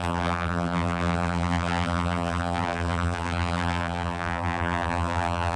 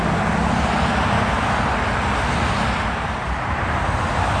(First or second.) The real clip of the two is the second